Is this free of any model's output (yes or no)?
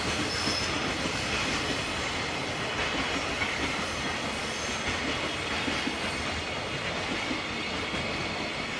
yes